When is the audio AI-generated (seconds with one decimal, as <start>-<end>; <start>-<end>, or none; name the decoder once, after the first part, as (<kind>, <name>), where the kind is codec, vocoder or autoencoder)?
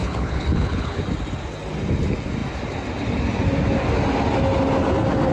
0.0-1.0 (codec, HILCodec)